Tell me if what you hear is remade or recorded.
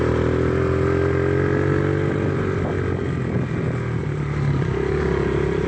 recorded